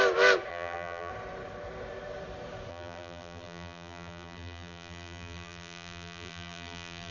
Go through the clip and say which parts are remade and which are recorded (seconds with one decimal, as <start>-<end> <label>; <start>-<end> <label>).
0.0-0.5 recorded; 0.5-1.1 remade; 1.1-2.7 recorded; 2.7-7.1 remade